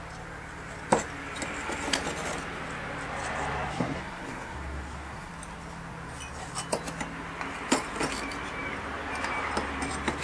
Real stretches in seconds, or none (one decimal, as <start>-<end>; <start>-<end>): 0.0-3.7; 5.3-10.2